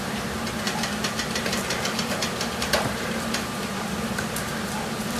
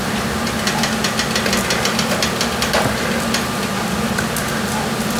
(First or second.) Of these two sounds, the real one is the second